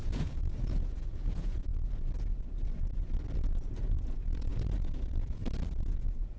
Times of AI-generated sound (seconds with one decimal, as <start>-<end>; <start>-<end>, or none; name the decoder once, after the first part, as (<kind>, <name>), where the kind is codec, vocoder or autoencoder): 0.0-1.7 (vocoder, Vocos); 3.8-5.4; 5.9-6.4